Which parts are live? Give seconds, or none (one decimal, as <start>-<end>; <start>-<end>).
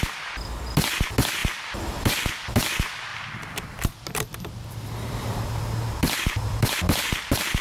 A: 0.0-1.4; 2.1-3.1